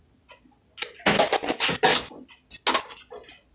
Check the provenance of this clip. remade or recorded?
recorded